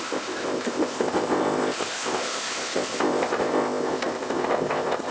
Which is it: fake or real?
fake